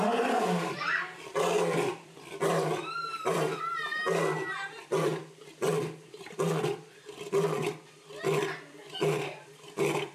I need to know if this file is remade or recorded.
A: recorded